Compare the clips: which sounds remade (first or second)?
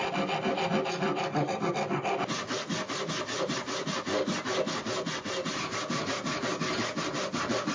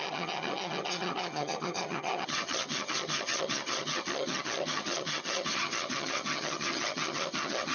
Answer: second